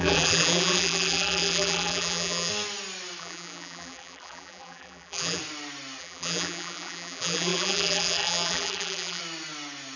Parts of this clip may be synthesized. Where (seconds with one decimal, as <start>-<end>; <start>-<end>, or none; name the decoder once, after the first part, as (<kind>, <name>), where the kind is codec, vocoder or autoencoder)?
0.0-2.5 (vocoder, BigVGAN v2); 3.2-5.4; 6.0-9.2